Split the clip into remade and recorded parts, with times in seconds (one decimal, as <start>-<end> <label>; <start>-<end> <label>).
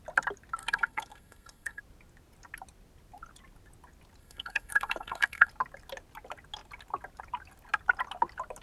0.0-0.6 recorded; 0.6-1.8 remade; 1.8-4.2 recorded; 4.2-5.5 remade; 5.5-8.6 recorded